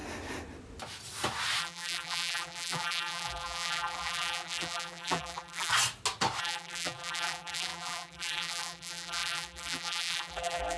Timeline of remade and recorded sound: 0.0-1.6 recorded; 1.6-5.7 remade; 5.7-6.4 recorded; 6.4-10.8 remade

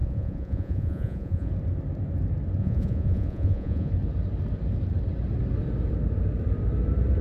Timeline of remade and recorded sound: 0.0-1.5 remade; 1.5-2.6 recorded; 2.6-3.9 remade; 3.9-7.2 recorded

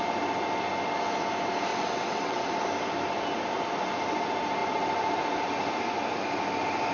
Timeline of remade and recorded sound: 0.0-1.7 recorded; 1.7-2.5 remade; 2.5-6.9 recorded

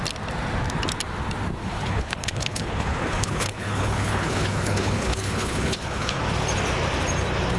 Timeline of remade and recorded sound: 0.0-1.6 recorded; 1.6-6.2 remade; 6.2-7.6 recorded

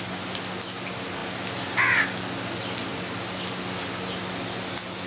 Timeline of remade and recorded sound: 0.0-5.1 recorded

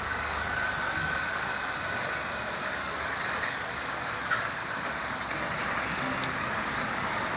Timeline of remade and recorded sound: 0.0-1.5 remade; 1.5-2.7 recorded; 2.7-4.6 remade; 4.6-6.4 recorded; 6.4-7.4 remade

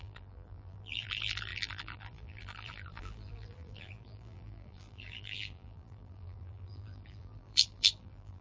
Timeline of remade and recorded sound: 0.0-8.4 remade

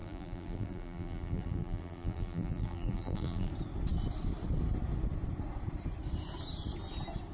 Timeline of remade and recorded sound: 0.0-3.5 remade; 3.5-7.3 recorded